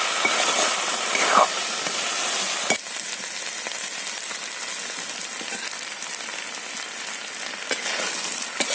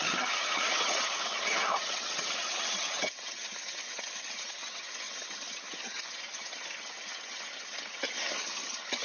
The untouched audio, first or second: first